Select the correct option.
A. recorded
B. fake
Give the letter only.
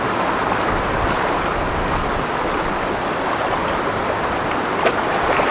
A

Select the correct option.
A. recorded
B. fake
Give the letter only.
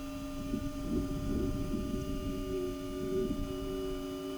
A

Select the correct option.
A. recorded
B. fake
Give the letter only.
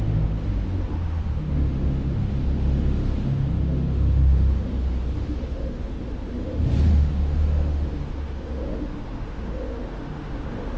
B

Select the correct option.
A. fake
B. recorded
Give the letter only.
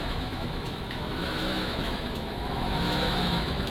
A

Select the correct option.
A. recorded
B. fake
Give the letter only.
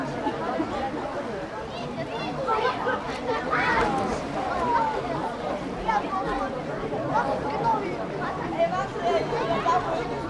A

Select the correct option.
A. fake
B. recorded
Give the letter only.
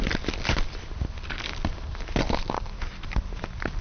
B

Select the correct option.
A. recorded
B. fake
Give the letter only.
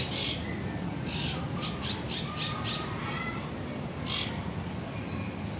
A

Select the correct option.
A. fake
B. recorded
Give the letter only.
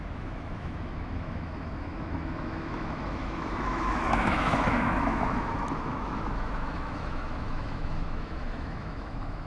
A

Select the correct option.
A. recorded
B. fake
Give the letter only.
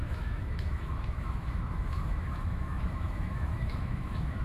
B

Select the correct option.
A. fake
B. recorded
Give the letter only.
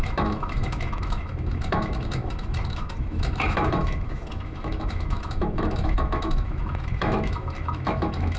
A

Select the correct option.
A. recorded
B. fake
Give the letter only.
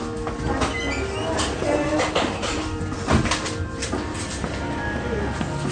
A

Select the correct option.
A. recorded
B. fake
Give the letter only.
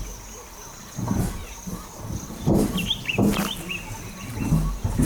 A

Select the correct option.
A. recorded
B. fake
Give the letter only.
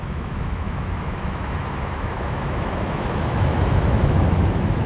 B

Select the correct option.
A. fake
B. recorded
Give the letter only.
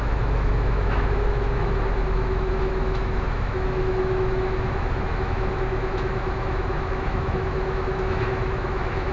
A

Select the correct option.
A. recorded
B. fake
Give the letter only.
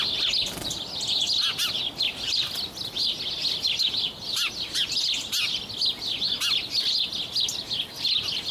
A